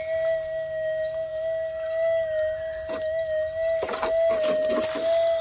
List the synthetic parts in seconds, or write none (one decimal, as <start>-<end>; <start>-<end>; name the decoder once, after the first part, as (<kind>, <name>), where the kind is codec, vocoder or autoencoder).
none